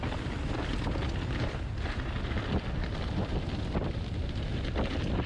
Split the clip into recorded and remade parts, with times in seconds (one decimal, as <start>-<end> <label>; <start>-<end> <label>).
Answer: 0.0-5.3 recorded